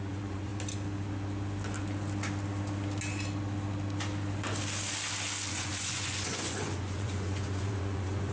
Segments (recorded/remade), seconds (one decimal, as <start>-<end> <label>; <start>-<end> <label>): 0.0-0.5 remade; 0.5-5.5 recorded; 5.5-8.3 remade

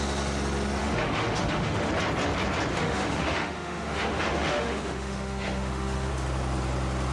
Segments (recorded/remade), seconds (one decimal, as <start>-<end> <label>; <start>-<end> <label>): 0.0-0.8 recorded; 0.8-1.9 remade; 1.9-2.7 recorded; 2.7-6.1 remade; 6.1-7.1 recorded

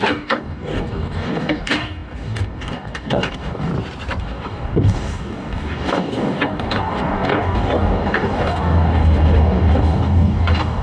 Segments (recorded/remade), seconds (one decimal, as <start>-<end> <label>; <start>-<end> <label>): 0.0-3.7 remade; 3.7-4.2 recorded; 4.2-10.8 remade